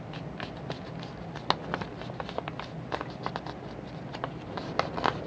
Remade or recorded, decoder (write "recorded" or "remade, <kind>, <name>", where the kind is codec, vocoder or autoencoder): recorded